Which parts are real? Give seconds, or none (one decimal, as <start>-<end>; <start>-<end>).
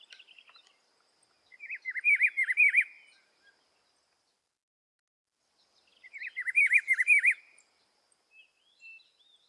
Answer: 0.0-5.9; 8.4-9.5